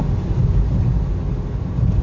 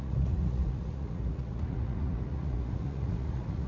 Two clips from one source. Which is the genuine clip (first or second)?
first